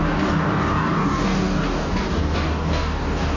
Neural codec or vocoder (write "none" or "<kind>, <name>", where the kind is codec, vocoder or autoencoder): codec, DAC